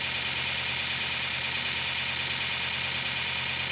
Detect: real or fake real